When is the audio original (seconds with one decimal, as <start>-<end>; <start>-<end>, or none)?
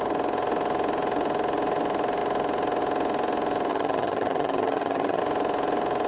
0.0-3.7; 5.2-6.1